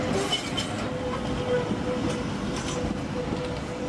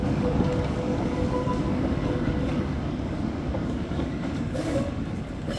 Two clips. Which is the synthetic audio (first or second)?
second